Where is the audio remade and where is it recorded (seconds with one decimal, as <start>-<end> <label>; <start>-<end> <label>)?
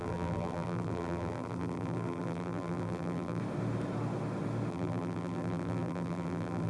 0.0-3.4 remade; 3.4-4.7 recorded; 4.7-6.7 remade